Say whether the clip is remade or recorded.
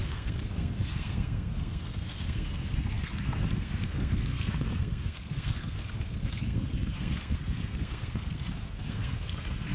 remade